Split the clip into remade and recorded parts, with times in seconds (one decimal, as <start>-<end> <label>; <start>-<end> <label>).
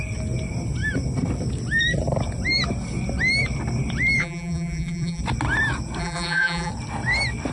0.0-4.2 recorded; 4.2-5.2 remade; 5.2-6.0 recorded; 6.0-6.7 remade; 6.7-7.5 recorded